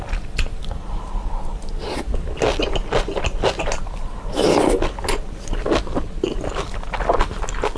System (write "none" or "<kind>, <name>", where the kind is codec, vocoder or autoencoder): none